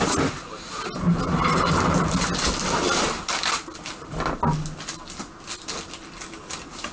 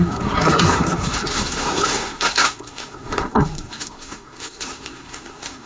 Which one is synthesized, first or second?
second